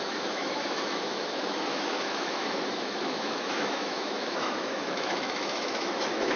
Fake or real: fake